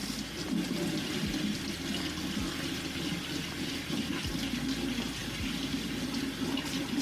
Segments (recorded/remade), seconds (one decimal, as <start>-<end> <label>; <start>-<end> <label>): 0.0-7.0 recorded